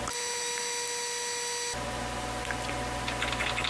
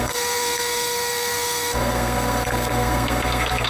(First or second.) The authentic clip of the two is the first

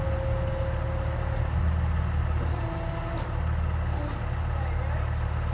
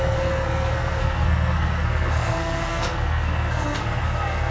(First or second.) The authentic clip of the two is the first